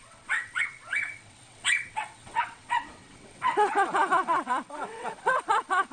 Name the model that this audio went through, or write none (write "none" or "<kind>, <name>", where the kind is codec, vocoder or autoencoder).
vocoder, WaveNeXt